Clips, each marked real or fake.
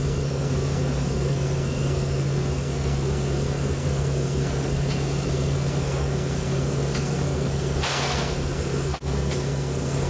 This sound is fake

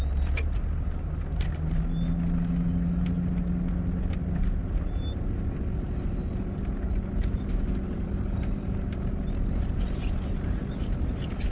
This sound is real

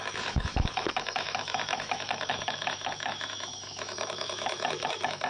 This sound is fake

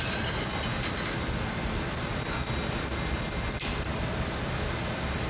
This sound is real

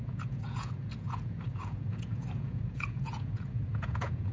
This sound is fake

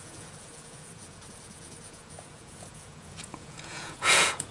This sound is fake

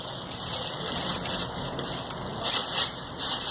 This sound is real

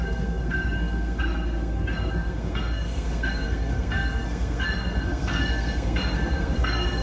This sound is fake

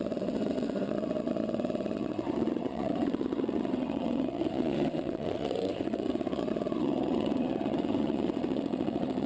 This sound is fake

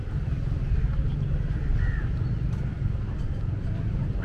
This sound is real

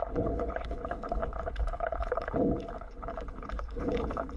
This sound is fake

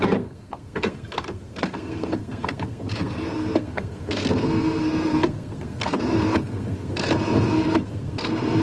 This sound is fake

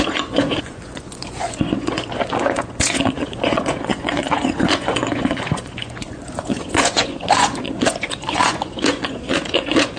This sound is fake